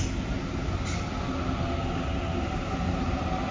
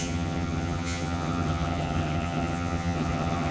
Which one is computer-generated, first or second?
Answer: second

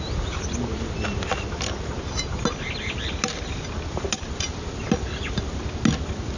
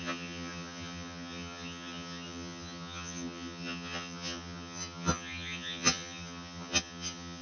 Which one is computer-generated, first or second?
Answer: second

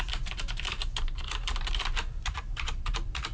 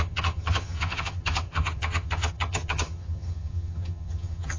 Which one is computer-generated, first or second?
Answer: second